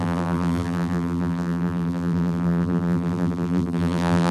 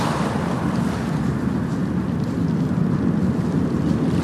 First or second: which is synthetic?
first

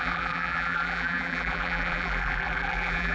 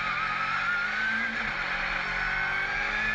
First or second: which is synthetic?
first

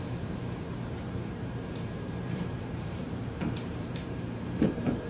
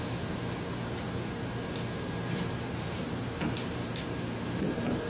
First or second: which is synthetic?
first